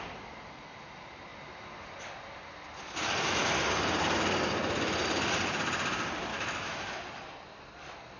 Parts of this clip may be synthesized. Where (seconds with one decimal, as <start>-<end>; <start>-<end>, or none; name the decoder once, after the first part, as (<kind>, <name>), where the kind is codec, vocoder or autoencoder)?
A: 6.3-6.9 (autoencoder, DAC-VAE)